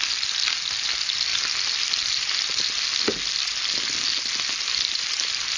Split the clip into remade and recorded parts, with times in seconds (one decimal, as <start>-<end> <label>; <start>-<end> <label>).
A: 0.0-5.6 recorded